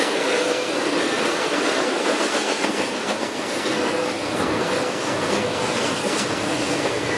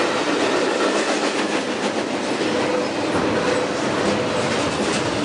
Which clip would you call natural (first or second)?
second